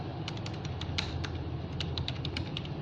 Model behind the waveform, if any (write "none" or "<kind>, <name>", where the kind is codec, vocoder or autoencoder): vocoder, BigVGAN v2